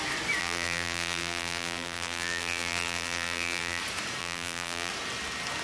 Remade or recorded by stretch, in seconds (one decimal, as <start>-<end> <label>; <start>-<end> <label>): 0.0-0.4 recorded; 0.4-3.8 remade; 3.8-4.2 recorded; 4.2-4.9 remade; 4.9-5.6 recorded